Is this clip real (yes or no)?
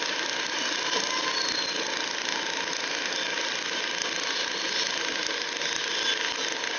yes